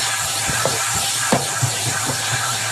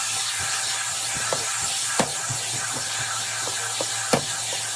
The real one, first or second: second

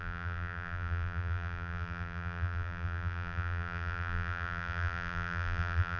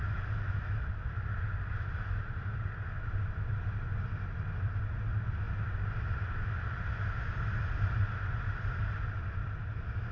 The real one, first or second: second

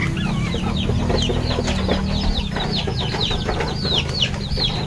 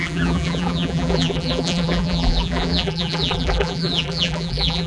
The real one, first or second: first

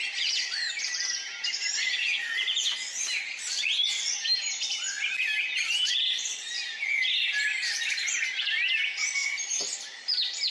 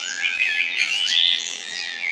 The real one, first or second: first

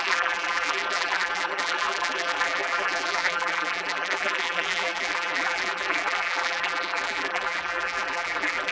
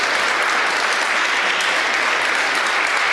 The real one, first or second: second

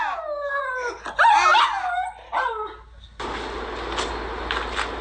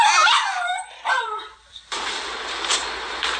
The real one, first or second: first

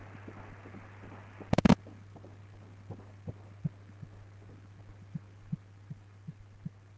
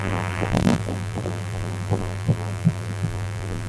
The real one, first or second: first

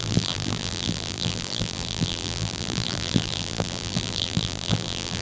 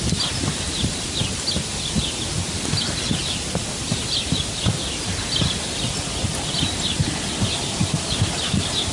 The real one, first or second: second